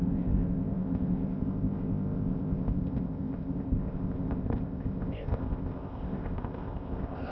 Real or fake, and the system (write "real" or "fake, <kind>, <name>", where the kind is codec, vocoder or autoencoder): fake, codec, ZipCodec